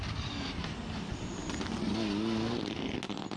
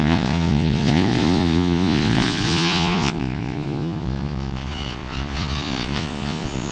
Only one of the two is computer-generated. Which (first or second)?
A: second